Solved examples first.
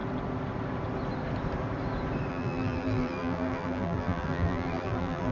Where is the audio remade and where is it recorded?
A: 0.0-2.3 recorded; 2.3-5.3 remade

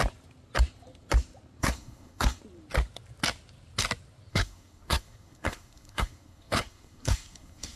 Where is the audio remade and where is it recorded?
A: 0.0-1.6 recorded; 1.6-2.4 remade; 2.4-4.3 recorded; 4.3-7.8 remade

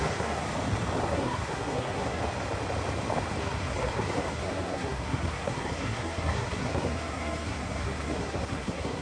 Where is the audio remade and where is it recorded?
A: 0.0-0.5 remade; 0.5-1.0 recorded; 1.0-2.2 remade; 2.2-3.4 recorded; 3.4-9.0 remade